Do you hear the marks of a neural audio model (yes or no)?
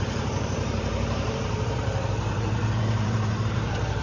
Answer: yes